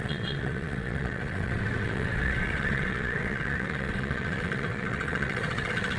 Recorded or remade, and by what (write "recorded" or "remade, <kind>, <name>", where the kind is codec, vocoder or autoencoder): remade, vocoder, WaveNeXt